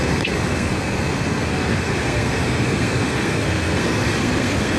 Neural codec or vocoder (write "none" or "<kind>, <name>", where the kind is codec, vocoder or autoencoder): codec, SNAC